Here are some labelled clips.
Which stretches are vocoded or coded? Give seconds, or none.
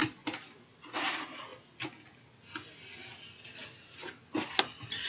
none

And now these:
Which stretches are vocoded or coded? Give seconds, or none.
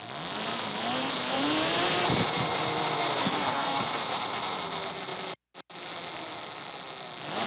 3.2-3.8 (codec, SNAC)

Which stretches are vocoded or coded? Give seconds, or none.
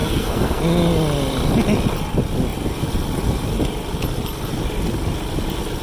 0.0-0.6 (codec, SNAC)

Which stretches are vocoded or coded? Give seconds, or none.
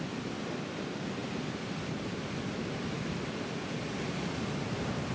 none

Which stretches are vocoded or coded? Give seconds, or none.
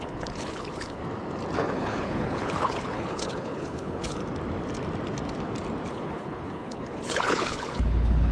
0.0-1.0 (codec, HILCodec); 1.6-4.2; 5.9-8.3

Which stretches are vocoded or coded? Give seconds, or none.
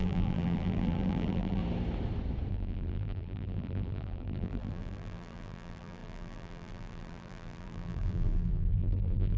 0.0-1.6 (vocoder, BigVGAN v2); 2.5-9.4